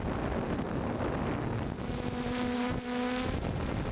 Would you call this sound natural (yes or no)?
yes